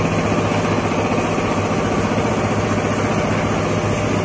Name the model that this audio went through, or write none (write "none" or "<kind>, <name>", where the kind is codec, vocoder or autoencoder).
none